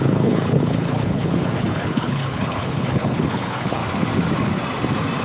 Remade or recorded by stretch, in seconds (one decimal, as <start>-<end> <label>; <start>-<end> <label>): 0.0-3.8 remade; 3.8-5.2 recorded

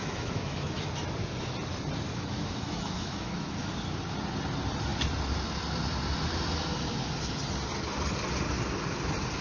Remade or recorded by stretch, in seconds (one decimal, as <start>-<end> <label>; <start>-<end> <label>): 0.0-0.9 remade; 0.9-2.1 recorded; 2.1-3.7 remade; 3.7-9.4 recorded

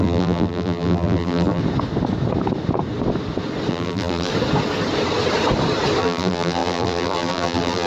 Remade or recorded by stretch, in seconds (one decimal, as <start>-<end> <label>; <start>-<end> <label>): 0.0-1.6 remade; 1.6-3.7 recorded; 3.7-4.3 remade; 4.3-6.0 recorded; 6.0-7.9 remade

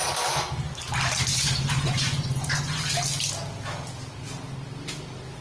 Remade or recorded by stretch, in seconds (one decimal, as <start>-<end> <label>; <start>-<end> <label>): 0.0-1.3 recorded; 1.3-2.9 remade; 2.9-5.4 recorded